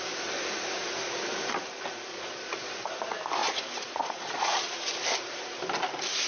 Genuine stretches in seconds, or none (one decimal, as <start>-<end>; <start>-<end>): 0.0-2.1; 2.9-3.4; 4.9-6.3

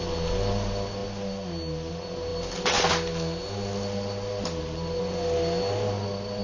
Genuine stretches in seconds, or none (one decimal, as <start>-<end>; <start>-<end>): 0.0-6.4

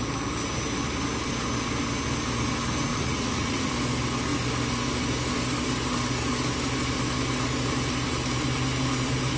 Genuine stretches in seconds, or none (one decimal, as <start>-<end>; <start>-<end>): 0.0-2.9; 3.7-9.4

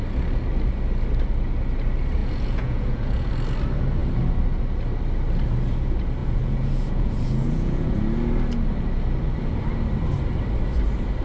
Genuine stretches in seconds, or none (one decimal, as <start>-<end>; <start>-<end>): 0.0-2.2; 3.3-6.2; 7.9-11.2